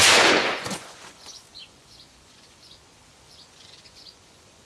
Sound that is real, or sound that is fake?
fake